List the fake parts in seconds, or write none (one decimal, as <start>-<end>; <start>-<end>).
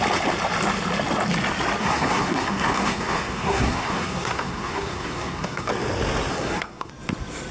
1.8-5.7; 6.3-6.9